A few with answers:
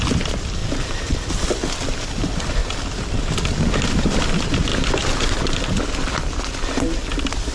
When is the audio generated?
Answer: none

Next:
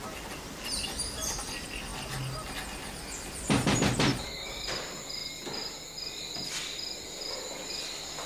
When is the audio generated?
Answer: 0.0-1.9 (vocoder, BigVGAN v2); 2.8-5.2; 6.0-8.3

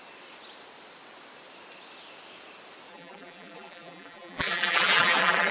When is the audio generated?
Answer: 2.9-5.5 (vocoder, BigVGAN v2)

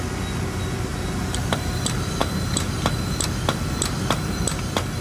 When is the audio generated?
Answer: 0.9-1.7 (vocoder, BigVGAN v2); 2.2-2.7

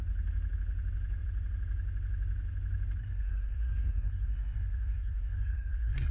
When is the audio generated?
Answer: 3.0-6.1 (codec, SNAC)

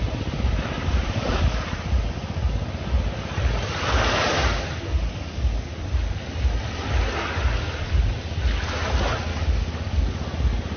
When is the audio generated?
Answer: 9.3-10.0 (codec, DAC)

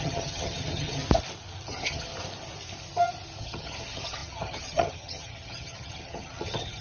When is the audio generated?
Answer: 0.0-1.0 (vocoder, HiFi-GAN); 1.7-2.1; 3.4-6.8